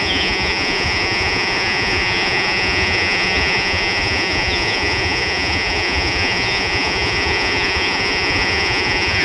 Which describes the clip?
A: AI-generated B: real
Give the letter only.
A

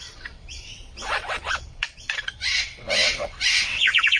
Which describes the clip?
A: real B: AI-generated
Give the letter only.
B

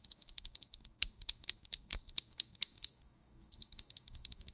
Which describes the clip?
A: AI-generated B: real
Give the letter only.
A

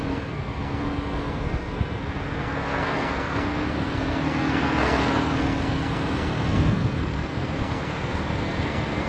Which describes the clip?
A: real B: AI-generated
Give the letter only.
B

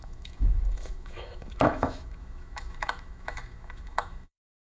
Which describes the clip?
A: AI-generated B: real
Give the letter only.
A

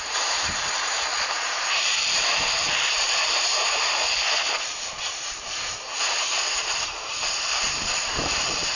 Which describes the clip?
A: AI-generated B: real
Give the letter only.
A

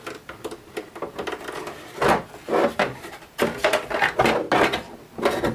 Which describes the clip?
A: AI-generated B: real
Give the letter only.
B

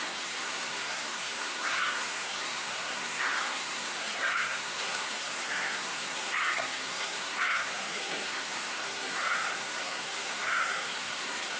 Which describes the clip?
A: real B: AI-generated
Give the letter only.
B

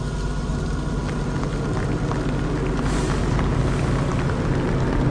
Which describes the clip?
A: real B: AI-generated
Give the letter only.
A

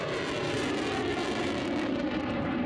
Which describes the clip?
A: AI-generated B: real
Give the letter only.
B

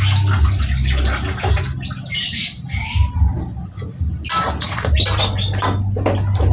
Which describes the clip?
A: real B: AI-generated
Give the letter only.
A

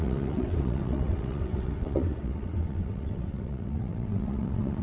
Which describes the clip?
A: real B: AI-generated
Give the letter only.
B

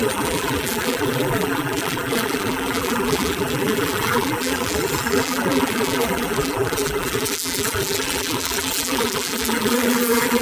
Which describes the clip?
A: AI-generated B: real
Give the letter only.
A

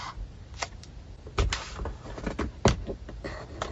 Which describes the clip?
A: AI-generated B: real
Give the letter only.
B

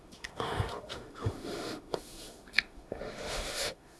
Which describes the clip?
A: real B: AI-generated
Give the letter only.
B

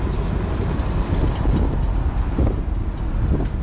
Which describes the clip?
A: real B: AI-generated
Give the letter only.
A